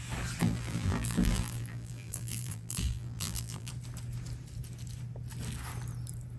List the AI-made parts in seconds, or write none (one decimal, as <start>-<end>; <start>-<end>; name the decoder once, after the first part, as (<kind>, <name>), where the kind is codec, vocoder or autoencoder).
0.4-3.7 (vocoder, BigVGAN v2)